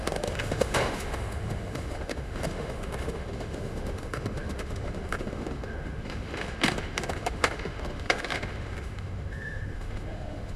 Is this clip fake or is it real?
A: fake